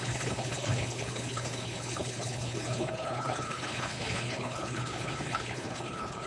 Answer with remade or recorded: remade